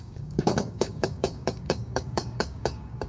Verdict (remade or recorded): remade